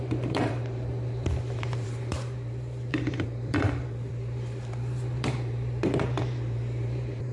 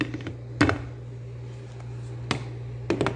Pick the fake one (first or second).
first